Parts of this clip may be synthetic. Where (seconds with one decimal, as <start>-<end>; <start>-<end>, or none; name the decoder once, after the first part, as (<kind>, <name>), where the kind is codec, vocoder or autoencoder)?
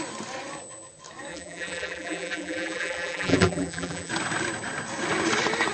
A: 1.3-4.1 (vocoder, BigVGAN v2)